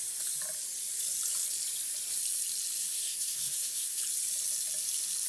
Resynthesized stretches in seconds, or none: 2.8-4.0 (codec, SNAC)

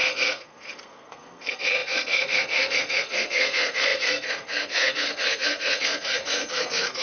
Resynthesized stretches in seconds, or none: 0.0-7.0 (codec, SNAC)

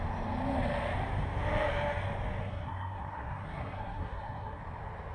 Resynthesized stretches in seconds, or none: 2.4-4.6 (codec, SNAC)